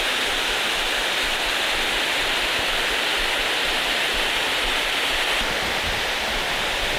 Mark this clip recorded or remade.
recorded